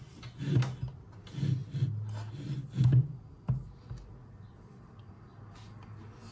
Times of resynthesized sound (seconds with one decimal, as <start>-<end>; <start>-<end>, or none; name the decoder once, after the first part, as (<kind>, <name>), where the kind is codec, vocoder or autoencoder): none